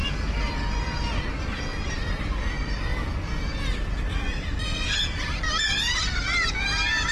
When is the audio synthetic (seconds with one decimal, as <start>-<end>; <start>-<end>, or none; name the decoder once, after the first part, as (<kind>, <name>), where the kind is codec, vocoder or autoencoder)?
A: 1.7-2.4 (vocoder, BigVGAN v2); 2.9-5.9